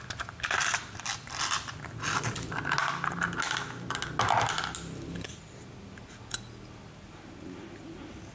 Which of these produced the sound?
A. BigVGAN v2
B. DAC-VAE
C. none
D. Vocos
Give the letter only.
C